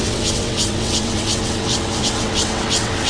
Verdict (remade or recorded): remade